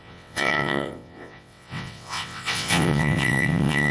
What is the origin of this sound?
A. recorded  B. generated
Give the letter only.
B